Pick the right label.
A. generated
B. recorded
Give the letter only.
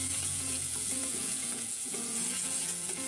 A